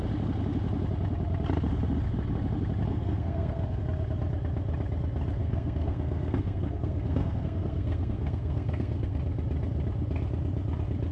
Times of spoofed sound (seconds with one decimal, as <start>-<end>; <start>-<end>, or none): 2.9-3.8; 5.4-9.2